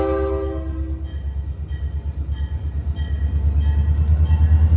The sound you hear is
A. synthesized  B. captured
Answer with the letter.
B